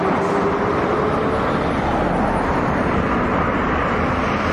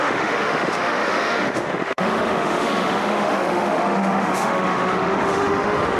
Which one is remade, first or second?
second